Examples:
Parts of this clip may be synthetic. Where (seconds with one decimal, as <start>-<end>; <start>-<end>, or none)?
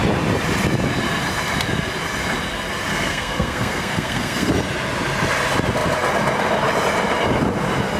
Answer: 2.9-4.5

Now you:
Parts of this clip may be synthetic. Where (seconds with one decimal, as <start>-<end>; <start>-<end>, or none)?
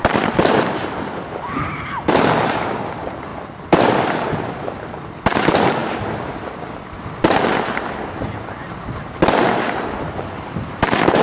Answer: 0.0-3.3; 3.9-5.8; 7.2-11.2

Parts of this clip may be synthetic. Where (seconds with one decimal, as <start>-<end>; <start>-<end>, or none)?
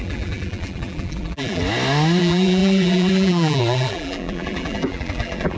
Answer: 0.0-1.6; 2.2-5.6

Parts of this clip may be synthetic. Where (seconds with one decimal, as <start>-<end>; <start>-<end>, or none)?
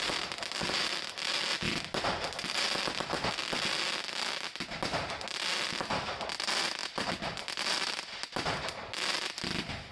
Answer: 1.5-3.3; 6.8-9.9